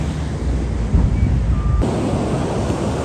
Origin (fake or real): real